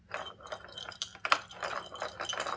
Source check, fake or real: real